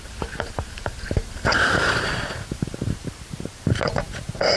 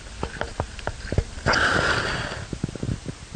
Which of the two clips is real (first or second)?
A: second